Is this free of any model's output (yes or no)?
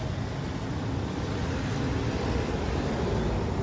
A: yes